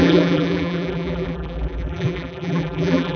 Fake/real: fake